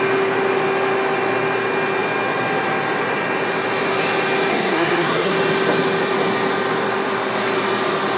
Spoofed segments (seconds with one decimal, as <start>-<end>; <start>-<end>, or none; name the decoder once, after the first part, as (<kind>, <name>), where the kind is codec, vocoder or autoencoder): 4.5-5.3 (codec, SNAC)